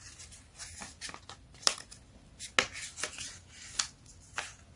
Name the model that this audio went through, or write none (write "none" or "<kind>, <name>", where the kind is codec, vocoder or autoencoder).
none